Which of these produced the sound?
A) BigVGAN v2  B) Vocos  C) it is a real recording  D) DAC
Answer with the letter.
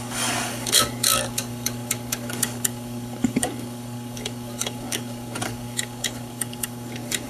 D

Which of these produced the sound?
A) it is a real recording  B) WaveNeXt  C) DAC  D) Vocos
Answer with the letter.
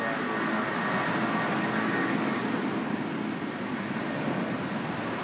A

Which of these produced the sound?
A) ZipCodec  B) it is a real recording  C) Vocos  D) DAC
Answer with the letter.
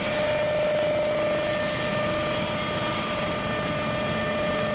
B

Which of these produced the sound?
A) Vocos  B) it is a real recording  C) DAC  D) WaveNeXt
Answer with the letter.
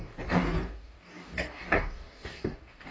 C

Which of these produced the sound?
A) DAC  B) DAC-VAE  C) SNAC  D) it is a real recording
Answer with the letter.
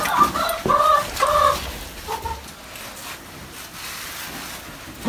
D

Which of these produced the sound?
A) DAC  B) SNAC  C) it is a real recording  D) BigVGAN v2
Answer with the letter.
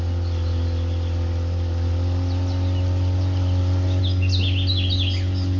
C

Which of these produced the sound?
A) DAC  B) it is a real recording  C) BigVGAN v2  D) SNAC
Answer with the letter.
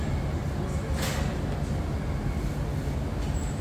B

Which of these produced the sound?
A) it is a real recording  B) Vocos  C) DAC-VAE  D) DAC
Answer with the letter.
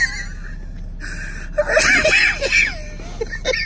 A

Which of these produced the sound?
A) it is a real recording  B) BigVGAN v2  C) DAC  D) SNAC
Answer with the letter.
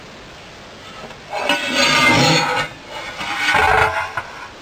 A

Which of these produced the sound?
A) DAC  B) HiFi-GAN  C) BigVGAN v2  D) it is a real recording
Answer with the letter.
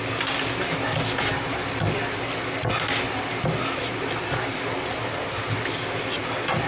D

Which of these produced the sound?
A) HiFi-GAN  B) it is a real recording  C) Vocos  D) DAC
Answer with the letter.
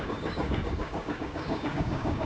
D